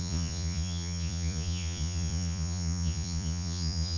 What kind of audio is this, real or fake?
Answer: fake